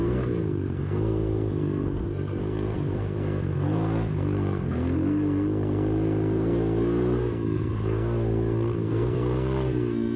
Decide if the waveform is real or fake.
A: fake